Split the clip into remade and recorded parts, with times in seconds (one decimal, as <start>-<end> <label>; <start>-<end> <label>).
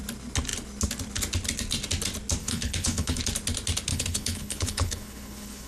0.0-2.4 recorded; 2.4-3.2 remade; 3.2-3.9 recorded; 3.9-5.7 remade